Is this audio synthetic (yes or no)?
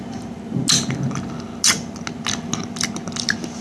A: no